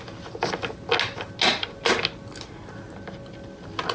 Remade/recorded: recorded